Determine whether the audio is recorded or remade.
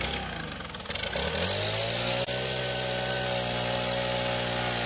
recorded